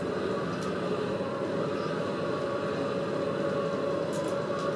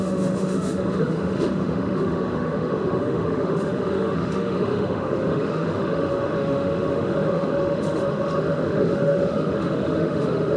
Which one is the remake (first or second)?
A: second